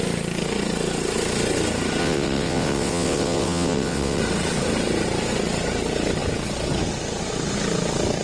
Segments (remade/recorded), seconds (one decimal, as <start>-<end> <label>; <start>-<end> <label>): 0.0-2.0 recorded; 2.0-4.2 remade; 4.2-8.2 recorded

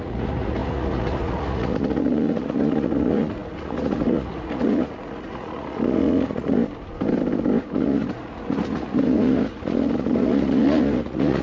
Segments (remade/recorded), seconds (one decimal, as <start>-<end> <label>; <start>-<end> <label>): 0.0-6.6 remade; 6.6-7.6 recorded; 7.6-11.4 remade

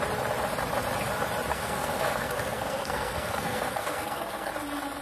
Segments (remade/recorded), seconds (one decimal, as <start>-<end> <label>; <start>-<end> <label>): 0.0-1.5 recorded; 1.5-4.5 remade; 4.5-5.0 recorded

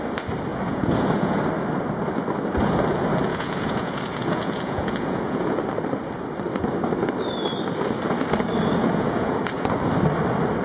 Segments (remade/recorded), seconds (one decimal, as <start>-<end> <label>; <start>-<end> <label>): 0.0-0.5 recorded; 0.5-1.4 remade; 1.4-3.3 recorded; 3.3-5.6 remade; 5.6-8.8 recorded; 8.8-9.4 remade; 9.4-10.6 recorded

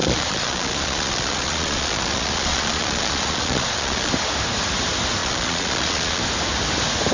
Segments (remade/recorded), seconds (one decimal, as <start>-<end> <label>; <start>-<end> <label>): 0.0-4.1 remade; 4.1-5.2 recorded; 5.2-6.2 remade; 6.2-7.1 recorded

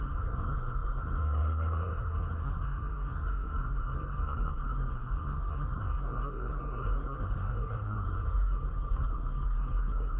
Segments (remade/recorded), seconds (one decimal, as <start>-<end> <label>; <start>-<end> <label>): 0.0-10.2 remade